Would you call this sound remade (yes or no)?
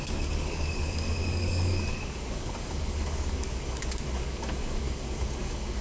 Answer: yes